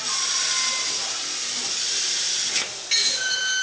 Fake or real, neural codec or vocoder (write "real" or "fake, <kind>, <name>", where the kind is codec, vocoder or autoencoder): real